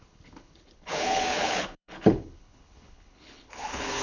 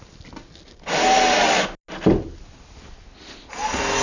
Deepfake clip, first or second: first